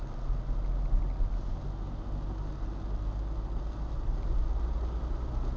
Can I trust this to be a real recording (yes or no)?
yes